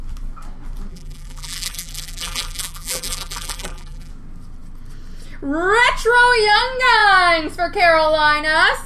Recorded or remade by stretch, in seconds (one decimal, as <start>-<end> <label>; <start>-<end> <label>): 0.0-0.9 recorded; 0.9-4.1 remade; 4.1-8.9 recorded

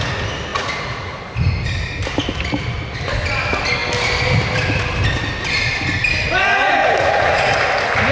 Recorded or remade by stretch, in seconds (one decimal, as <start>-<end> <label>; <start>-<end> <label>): 0.0-0.5 recorded; 0.5-1.2 remade; 1.2-6.5 recorded; 6.5-7.5 remade; 7.5-8.1 recorded

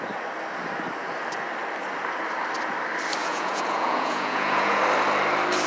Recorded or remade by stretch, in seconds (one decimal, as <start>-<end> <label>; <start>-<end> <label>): 0.0-3.2 recorded; 3.2-4.8 remade; 4.8-5.7 recorded

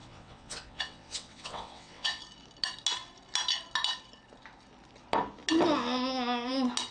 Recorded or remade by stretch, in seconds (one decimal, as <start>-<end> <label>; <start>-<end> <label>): 0.0-2.2 remade; 2.2-6.9 recorded